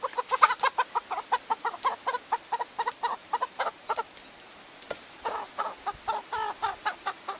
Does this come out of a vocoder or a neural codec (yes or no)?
no